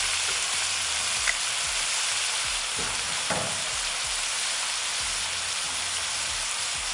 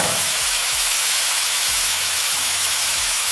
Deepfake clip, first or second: second